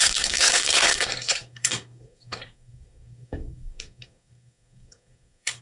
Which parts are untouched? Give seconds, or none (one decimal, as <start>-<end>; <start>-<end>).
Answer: none